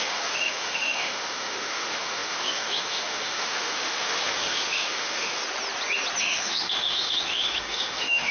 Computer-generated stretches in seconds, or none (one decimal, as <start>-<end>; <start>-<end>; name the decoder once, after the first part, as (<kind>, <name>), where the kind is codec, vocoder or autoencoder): 0.0-5.4 (autoencoder, DAC-VAE); 6.2-8.3